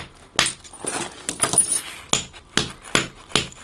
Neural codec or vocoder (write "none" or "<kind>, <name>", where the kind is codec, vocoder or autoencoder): none